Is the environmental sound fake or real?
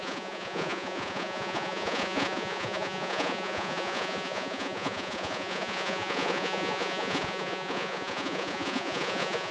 fake